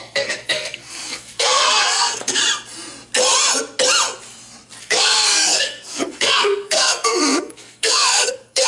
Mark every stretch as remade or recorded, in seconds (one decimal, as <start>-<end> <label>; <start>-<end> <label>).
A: 0.0-2.4 remade; 2.4-4.8 recorded; 4.8-8.7 remade